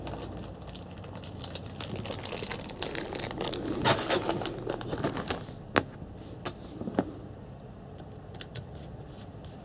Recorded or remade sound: recorded